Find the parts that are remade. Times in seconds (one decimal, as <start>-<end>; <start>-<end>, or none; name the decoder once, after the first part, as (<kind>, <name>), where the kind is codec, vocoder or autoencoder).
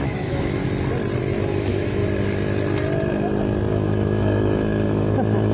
0.0-0.6 (autoencoder, DAC-VAE); 1.6-2.0; 3.7-5.5